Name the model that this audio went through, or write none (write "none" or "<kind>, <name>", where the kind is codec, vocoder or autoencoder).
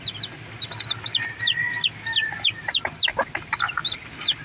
none